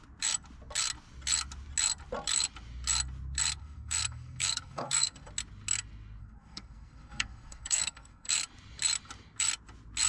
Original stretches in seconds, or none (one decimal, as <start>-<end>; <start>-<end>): 0.0-3.6; 5.3-6.2; 8.4-10.1